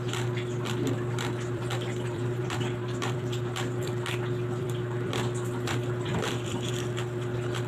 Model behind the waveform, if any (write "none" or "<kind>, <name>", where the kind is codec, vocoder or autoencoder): vocoder, BigVGAN v2